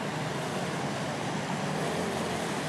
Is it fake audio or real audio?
real